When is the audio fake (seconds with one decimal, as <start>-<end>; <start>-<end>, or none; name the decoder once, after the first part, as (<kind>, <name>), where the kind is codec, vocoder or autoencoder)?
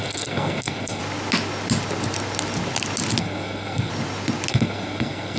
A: 0.0-1.0 (codec, SNAC); 3.2-3.9; 4.5-5.4